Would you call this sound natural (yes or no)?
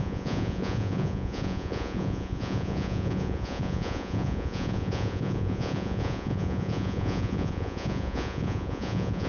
no